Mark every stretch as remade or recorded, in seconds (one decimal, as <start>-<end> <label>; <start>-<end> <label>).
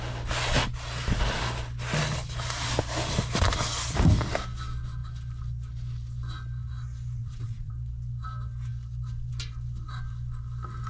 0.0-7.2 recorded; 7.2-7.7 remade; 7.7-10.9 recorded